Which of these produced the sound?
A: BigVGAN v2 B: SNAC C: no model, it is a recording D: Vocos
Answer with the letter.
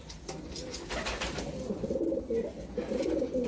C